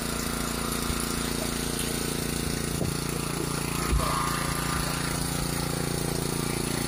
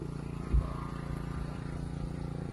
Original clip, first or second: first